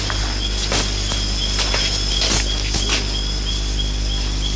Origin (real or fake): real